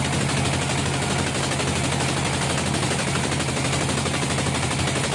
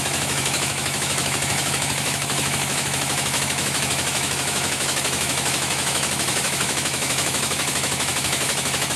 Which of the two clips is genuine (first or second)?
first